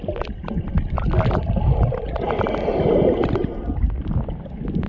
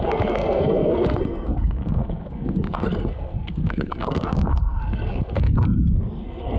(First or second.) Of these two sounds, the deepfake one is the second